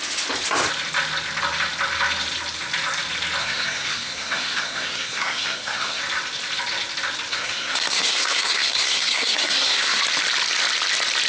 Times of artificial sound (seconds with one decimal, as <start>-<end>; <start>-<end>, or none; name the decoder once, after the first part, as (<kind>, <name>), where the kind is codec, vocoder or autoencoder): 3.4-6.0 (codec, SNAC); 7.3-10.0

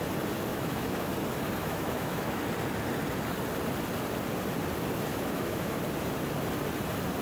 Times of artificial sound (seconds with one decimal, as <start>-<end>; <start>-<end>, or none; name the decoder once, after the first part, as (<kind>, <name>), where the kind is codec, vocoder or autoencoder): 0.5-1.1 (autoencoder, DAC-VAE); 1.6-2.4; 5.1-5.8